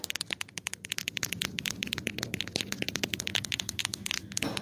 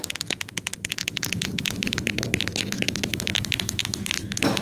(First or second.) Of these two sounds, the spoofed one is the second